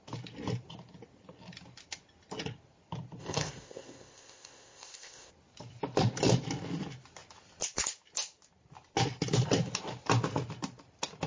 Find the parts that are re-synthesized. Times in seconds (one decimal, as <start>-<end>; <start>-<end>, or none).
3.2-5.3